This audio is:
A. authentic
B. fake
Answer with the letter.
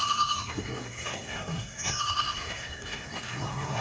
B